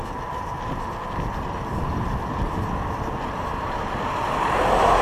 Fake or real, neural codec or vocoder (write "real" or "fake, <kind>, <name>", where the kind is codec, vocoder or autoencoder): real